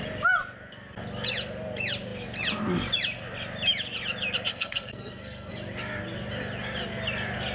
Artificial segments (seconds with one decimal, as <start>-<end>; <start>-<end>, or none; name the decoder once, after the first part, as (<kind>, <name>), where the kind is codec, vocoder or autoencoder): 4.5-5.5 (codec, SNAC)